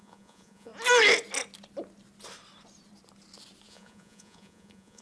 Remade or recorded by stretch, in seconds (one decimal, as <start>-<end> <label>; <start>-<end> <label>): 0.0-0.7 remade; 0.7-3.7 recorded; 3.7-5.0 remade